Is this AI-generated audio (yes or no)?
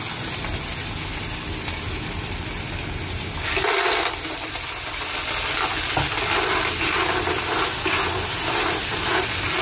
no